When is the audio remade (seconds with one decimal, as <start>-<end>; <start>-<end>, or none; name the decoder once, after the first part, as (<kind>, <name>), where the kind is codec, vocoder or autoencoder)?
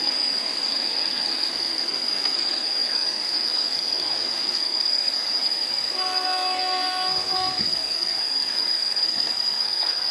0.0-10.1 (codec, SNAC)